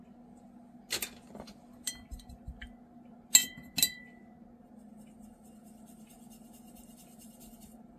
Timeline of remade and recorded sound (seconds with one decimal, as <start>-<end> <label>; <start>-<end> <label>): 0.0-8.0 recorded